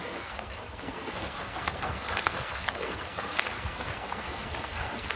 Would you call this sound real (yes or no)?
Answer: no